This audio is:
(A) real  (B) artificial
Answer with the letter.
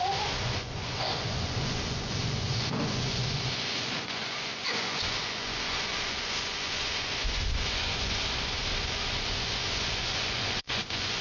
B